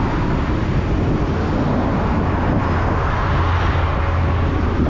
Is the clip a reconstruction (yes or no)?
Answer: no